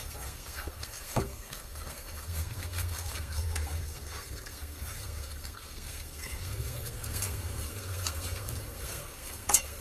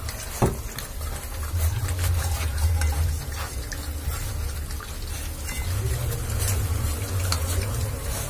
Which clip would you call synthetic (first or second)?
first